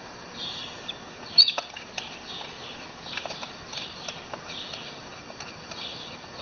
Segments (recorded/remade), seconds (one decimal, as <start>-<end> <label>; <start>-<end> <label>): 0.0-0.6 remade; 0.6-3.3 recorded; 3.3-4.0 remade; 4.0-5.2 recorded; 5.2-6.4 remade